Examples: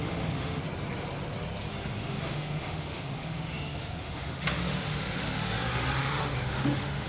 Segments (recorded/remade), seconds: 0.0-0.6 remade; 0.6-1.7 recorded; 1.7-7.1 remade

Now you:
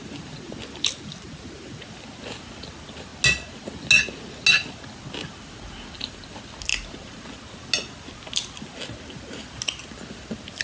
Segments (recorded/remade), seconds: 0.0-10.6 recorded